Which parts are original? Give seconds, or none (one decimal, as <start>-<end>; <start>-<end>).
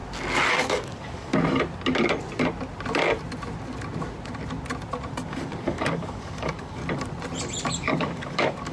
0.0-0.5; 1.3-5.3; 6.8-7.8